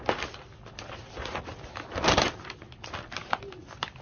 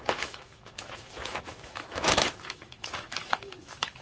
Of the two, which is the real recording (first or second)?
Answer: first